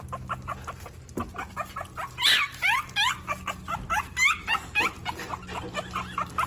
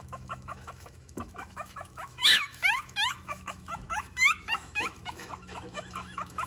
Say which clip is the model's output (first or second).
second